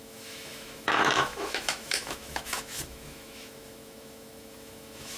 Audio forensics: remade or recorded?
remade